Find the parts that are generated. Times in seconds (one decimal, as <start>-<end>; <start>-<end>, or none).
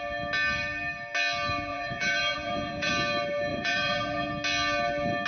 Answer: 1.7-2.9; 3.5-4.3